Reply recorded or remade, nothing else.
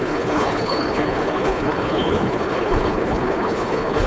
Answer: remade